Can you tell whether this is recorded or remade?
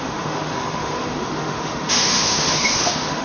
remade